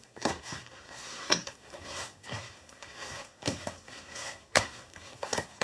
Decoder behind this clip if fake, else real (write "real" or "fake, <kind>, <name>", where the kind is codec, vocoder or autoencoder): fake, codec, SNAC